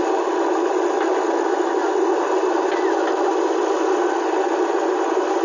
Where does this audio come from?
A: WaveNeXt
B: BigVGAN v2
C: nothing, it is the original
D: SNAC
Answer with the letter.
C